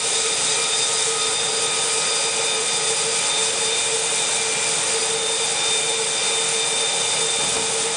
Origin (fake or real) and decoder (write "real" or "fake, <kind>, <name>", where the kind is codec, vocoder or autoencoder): real